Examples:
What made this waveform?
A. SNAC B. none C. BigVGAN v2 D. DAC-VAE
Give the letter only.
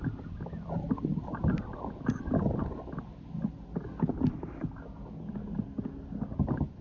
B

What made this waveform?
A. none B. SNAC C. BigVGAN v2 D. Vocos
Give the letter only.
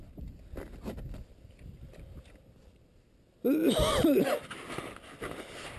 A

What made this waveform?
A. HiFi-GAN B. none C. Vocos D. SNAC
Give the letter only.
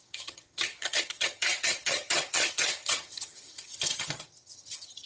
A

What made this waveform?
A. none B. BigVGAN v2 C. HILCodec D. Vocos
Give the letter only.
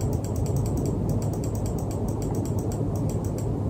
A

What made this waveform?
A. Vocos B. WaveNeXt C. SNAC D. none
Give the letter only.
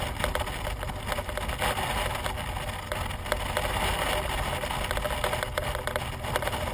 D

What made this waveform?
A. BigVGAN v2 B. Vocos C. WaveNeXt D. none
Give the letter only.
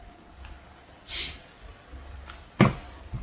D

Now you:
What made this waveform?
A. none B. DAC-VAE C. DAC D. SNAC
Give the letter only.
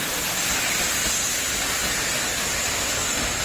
A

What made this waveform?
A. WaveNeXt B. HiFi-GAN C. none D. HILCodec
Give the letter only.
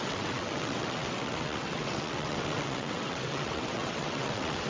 A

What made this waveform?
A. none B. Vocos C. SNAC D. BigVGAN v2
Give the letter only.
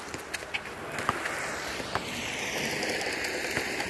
A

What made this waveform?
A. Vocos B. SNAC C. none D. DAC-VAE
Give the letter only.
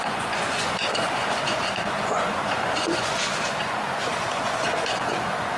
A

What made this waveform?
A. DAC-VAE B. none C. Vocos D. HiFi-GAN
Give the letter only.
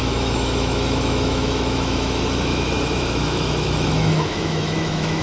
A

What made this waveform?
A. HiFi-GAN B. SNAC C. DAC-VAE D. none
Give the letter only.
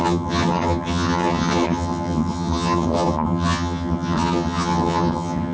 A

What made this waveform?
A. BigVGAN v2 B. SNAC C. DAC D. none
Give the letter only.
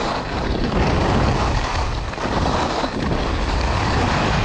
C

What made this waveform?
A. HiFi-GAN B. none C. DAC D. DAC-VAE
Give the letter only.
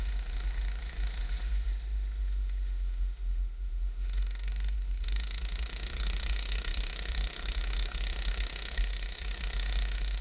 D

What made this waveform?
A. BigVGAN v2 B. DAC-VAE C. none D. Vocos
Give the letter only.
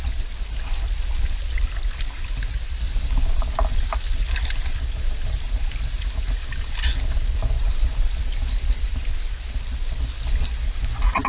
C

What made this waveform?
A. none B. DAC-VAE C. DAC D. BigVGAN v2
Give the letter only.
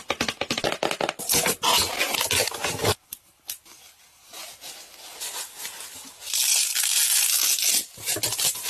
A